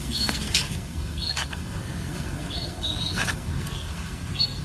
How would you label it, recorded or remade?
remade